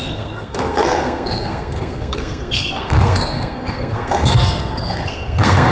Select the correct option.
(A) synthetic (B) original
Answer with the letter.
A